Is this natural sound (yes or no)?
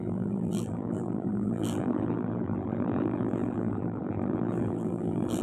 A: no